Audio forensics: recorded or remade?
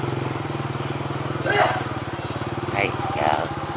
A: recorded